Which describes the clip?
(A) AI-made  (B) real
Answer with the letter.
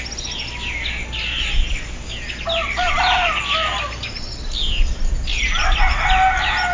B